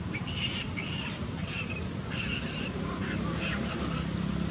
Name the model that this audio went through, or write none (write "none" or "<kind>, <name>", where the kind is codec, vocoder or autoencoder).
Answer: vocoder, BigVGAN v2